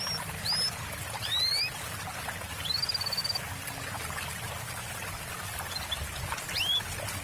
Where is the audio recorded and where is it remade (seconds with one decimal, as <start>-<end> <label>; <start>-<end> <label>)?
0.0-1.5 recorded; 1.5-2.8 remade; 2.8-7.2 recorded